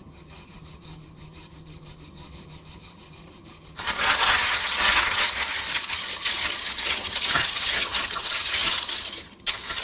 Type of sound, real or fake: fake